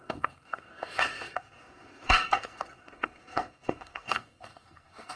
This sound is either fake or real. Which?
fake